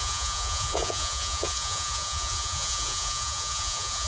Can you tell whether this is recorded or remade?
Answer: remade